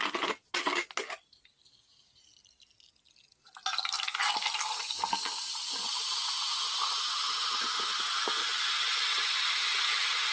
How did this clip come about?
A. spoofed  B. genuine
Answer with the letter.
B